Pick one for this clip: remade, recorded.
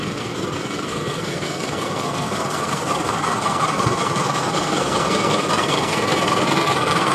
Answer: remade